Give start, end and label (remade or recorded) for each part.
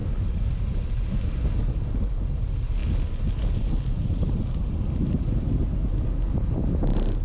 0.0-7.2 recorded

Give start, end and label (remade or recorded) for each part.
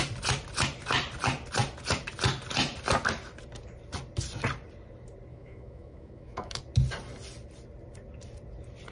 0.0-5.3 recorded; 5.3-6.6 remade; 6.6-8.9 recorded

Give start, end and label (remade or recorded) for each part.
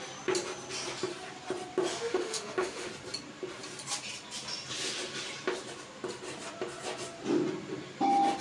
0.0-1.9 recorded; 1.9-2.9 remade; 2.9-8.4 recorded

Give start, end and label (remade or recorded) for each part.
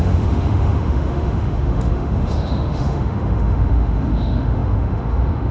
0.0-5.5 remade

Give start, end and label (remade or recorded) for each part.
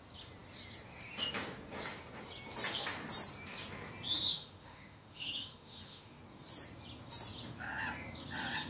0.0-4.3 recorded; 4.3-6.2 remade; 6.2-8.7 recorded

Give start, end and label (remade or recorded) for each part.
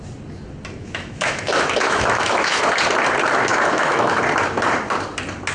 0.0-0.8 recorded; 0.8-2.6 remade; 2.6-3.5 recorded; 3.5-4.2 remade; 4.2-5.5 recorded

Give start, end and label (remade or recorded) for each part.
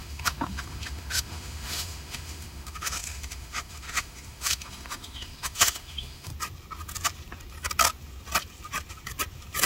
0.0-6.3 remade; 6.3-9.7 recorded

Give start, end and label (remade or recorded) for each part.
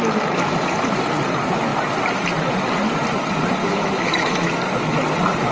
0.0-3.6 recorded; 3.6-4.5 remade; 4.5-5.5 recorded